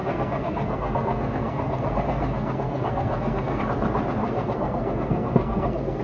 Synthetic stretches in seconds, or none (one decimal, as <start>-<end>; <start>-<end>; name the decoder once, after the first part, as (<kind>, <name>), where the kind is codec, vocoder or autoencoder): 0.0-3.6 (codec, SNAC); 4.2-6.0